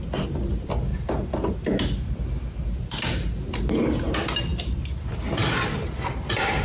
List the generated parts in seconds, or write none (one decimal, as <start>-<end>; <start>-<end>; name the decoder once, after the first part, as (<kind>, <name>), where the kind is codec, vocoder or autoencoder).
0.9-1.5 (vocoder, BigVGAN v2); 4.5-5.1